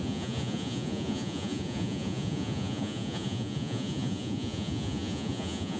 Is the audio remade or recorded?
remade